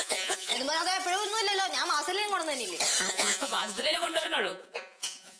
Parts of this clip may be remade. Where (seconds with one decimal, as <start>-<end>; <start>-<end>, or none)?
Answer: 0.0-0.5; 3.1-5.4